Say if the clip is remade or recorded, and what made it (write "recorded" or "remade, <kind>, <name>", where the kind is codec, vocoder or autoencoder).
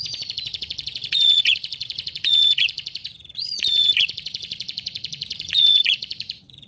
remade, vocoder, Vocos